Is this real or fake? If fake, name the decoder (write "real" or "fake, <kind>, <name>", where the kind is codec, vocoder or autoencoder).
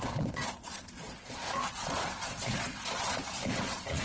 fake, vocoder, Vocos